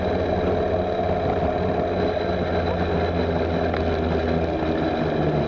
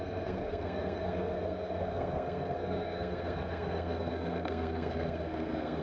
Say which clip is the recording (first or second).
first